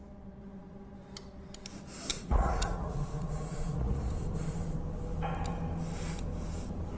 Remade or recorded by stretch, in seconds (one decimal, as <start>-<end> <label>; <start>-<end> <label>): 0.0-2.1 recorded; 2.1-4.1 remade; 4.1-7.0 recorded